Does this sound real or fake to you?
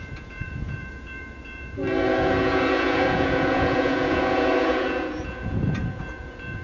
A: fake